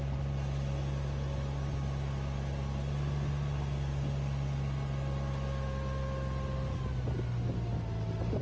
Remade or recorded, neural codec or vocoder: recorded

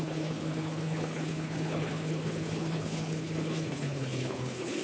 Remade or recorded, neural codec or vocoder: remade, codec, HILCodec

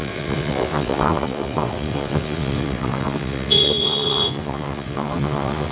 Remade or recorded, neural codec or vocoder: remade, vocoder, WaveNeXt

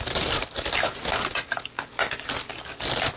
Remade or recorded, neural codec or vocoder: recorded